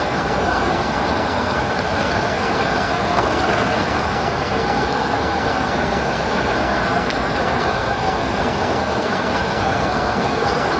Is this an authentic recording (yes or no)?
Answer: no